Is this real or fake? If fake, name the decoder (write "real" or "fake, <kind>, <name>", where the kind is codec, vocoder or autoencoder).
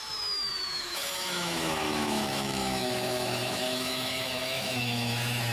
fake, autoencoder, DAC-VAE